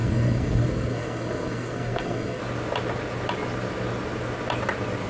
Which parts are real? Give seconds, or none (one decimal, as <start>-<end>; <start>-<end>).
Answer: 2.4-5.1